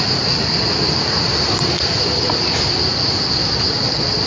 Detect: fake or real real